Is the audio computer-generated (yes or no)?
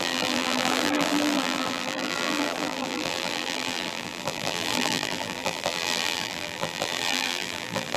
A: yes